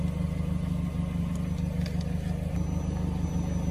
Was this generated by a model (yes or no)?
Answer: no